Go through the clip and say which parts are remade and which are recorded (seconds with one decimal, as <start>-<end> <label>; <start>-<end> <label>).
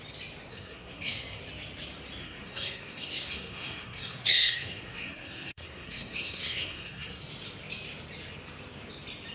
0.0-0.5 recorded; 0.5-1.4 remade; 1.4-2.2 recorded; 2.2-7.2 remade; 7.2-9.3 recorded